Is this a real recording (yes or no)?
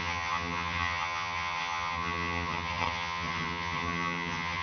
no